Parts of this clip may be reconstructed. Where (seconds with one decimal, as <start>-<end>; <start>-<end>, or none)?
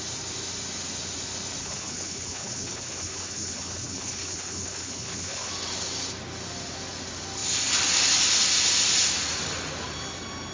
1.6-5.5